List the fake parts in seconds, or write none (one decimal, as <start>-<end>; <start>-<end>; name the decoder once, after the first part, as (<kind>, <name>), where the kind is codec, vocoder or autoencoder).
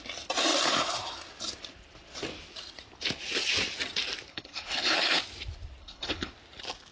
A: 4.3-5.2 (codec, HILCodec); 5.8-6.3